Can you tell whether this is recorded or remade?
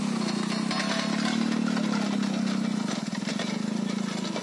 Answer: recorded